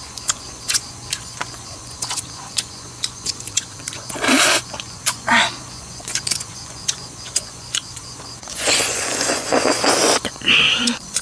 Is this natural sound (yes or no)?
no